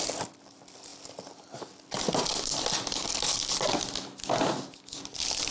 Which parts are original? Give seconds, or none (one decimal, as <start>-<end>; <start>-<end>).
0.0-5.5